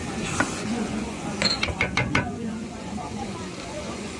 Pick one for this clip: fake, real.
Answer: fake